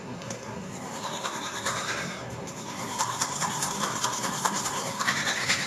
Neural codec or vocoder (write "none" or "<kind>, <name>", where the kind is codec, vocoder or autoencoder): codec, SNAC